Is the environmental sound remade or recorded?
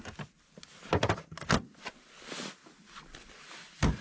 recorded